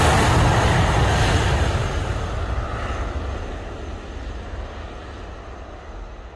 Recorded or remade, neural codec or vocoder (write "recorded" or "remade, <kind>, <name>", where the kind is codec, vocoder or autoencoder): recorded